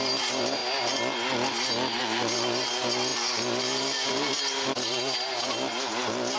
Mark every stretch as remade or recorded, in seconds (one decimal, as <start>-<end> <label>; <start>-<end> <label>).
0.0-0.6 remade; 0.6-2.0 recorded; 2.0-6.4 remade